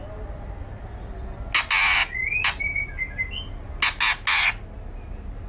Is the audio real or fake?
real